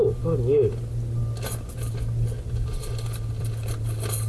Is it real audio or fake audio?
fake